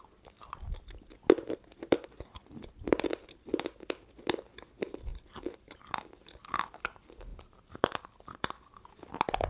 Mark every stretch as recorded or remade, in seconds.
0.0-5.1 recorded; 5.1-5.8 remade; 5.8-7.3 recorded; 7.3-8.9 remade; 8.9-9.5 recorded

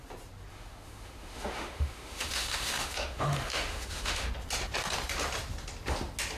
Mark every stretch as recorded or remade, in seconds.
0.0-0.5 recorded; 0.5-4.3 remade; 4.3-6.4 recorded

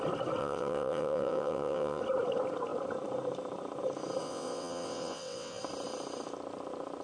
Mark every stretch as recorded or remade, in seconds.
0.0-0.4 recorded; 0.4-2.0 remade; 2.0-4.2 recorded; 4.2-5.6 remade; 5.6-7.0 recorded

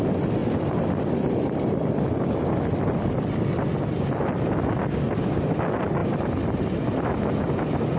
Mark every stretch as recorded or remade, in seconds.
0.0-8.0 recorded

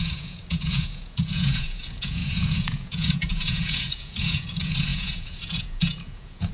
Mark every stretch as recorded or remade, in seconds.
0.0-6.5 remade